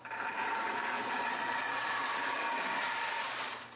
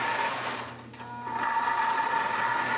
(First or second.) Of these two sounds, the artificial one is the first